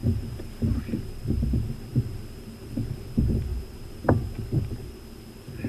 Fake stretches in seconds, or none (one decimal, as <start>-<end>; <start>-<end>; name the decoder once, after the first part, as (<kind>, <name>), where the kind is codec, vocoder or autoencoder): 0.0-0.8 (vocoder, BigVGAN v2); 3.5-4.4